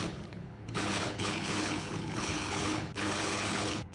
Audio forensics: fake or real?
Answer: fake